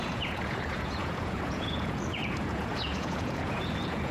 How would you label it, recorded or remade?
remade